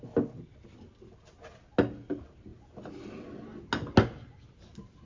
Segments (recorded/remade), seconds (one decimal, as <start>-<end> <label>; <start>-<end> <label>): 0.0-5.0 recorded